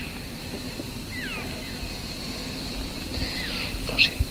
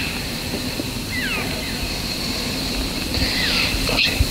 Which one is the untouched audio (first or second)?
first